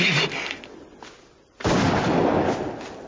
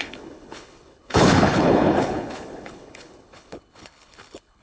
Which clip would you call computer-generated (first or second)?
second